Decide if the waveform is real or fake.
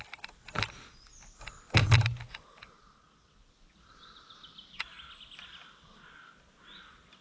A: real